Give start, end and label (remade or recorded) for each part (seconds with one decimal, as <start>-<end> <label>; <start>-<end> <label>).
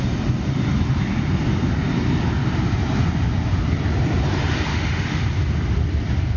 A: 0.0-4.7 recorded; 4.7-5.2 remade; 5.2-6.4 recorded